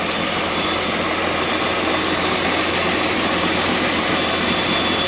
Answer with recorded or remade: recorded